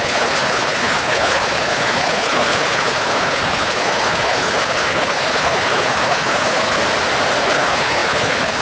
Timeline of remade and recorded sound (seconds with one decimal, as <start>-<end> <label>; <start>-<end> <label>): 0.0-6.8 remade; 6.8-7.4 recorded; 7.4-8.6 remade